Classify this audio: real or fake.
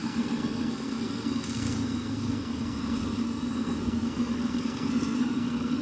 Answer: fake